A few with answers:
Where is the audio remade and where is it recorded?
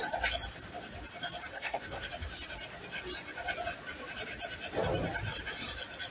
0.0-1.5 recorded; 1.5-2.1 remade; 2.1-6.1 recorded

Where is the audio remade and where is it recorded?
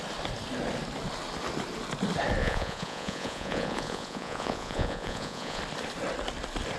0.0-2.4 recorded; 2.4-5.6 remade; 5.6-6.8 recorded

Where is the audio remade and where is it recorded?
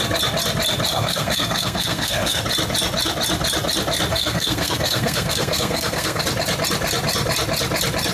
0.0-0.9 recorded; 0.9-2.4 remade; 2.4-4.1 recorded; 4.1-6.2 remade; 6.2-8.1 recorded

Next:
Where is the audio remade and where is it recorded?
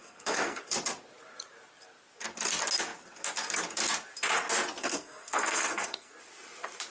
0.0-0.6 remade; 0.6-4.8 recorded; 4.8-6.2 remade; 6.2-6.9 recorded